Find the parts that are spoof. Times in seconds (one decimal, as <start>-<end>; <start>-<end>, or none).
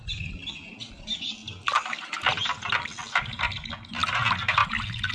none